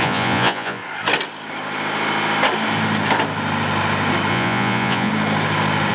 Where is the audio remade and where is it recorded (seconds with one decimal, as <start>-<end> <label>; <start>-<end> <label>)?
0.0-0.8 remade; 0.8-4.3 recorded; 4.3-5.1 remade; 5.1-5.9 recorded